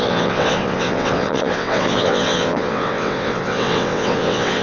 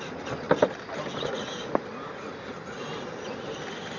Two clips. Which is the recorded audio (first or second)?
second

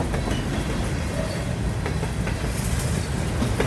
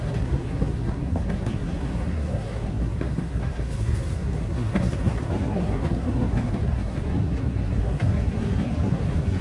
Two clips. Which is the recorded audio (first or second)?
first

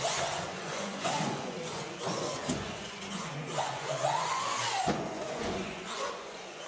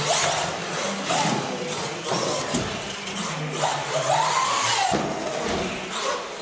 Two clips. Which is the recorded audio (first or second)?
second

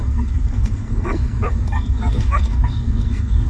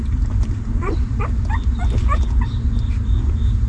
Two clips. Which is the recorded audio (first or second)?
second